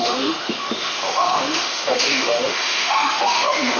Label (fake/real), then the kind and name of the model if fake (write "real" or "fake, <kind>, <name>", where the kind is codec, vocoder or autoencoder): fake, autoencoder, DAC-VAE